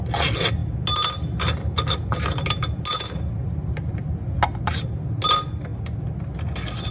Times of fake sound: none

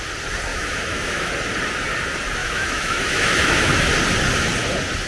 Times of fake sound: 0.5-1.3 (autoencoder, DAC-VAE); 2.4-3.9

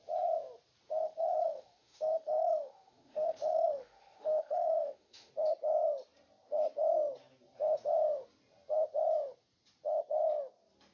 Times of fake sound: 1.0-5.3 (autoencoder, DAC-VAE)

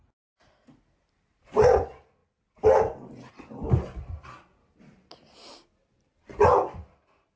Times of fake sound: none